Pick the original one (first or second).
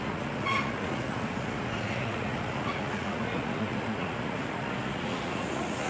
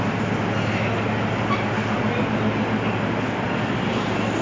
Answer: second